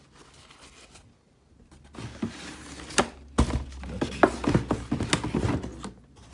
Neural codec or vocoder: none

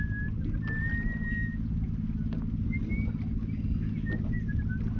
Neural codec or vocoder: none